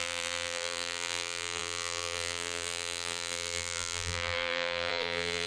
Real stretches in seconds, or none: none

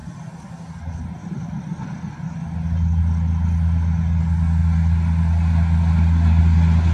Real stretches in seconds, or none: 0.7-1.2; 1.8-6.9

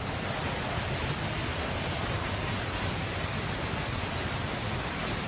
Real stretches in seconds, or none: 0.0-1.5; 4.7-5.3